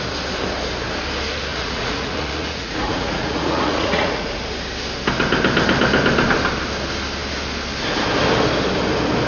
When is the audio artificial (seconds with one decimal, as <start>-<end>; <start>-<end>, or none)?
1.5-4.4